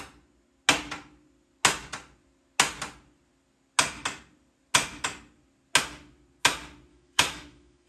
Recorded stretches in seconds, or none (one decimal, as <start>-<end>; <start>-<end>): 0.0-6.9